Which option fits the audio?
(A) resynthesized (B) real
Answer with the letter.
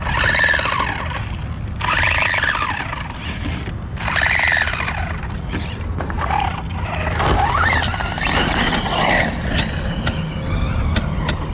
B